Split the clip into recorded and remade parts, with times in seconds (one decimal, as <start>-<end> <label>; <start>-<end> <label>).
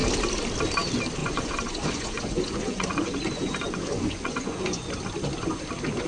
0.0-1.2 recorded; 1.2-4.9 remade; 4.9-6.1 recorded